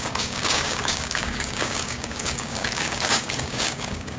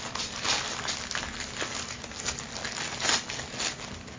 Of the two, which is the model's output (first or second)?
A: first